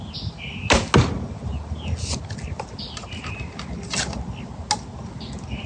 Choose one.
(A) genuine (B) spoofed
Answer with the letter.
A